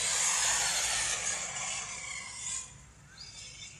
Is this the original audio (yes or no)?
yes